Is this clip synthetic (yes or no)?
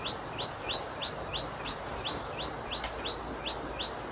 no